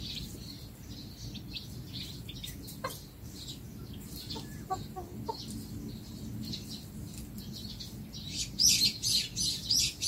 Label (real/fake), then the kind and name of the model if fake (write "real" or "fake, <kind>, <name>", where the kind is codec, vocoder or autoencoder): real